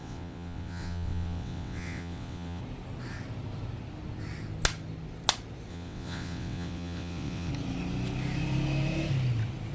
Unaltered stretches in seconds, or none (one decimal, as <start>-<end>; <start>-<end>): 2.6-5.7; 7.5-9.7